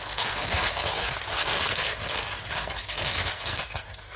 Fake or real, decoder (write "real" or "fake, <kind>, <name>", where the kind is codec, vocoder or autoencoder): fake, codec, SNAC